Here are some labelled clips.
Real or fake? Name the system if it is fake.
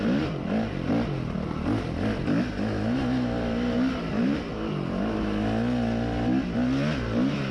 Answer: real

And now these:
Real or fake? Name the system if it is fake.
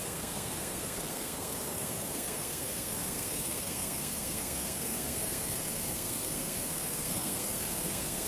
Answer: fake, codec, SNAC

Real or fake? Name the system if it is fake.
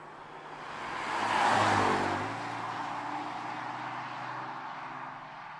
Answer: real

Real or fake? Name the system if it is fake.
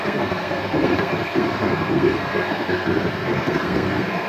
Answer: fake, codec, SNAC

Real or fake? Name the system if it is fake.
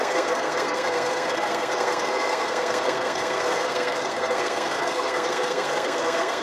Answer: fake, codec, SNAC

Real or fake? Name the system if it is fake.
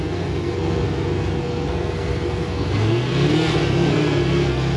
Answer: fake, codec, SNAC